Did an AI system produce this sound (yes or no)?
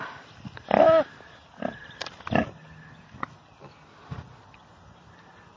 no